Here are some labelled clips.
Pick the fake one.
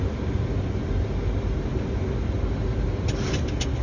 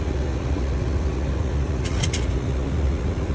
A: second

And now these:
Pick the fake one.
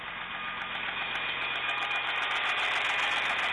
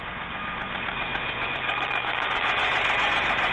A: second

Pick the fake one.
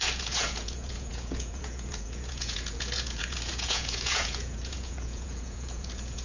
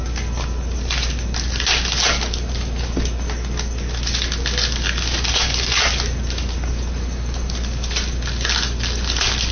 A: first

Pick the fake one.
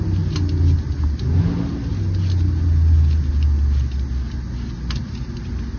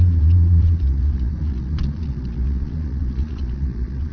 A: second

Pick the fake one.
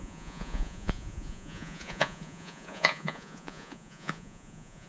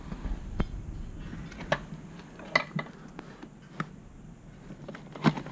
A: first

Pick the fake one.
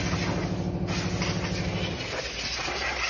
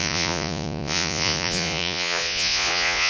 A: second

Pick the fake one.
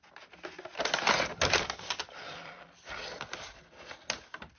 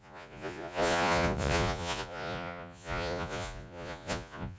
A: second